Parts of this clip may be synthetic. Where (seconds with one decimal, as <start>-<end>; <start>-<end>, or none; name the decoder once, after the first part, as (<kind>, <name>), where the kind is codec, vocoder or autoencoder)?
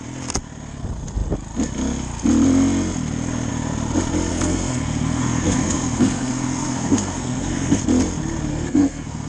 4.3-7.8 (codec, SNAC); 8.5-9.3